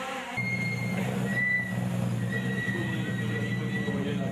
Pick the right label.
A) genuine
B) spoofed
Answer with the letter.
A